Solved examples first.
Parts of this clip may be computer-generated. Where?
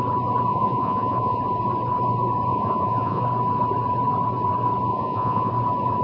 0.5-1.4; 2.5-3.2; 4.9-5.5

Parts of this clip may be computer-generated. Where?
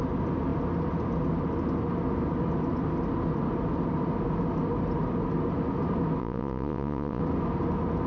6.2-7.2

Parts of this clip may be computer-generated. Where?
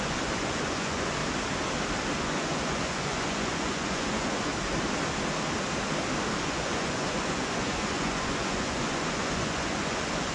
0.0-1.2; 2.2-4.5; 6.4-10.3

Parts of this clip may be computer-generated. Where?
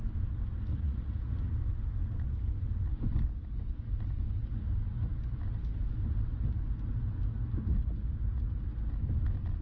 0.7-1.5